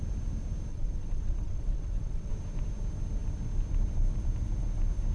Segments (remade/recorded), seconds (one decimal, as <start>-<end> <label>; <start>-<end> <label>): 0.0-0.7 recorded; 0.7-2.3 remade; 2.3-5.1 recorded